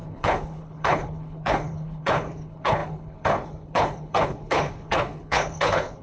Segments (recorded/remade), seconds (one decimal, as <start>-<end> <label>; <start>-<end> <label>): 0.0-6.0 remade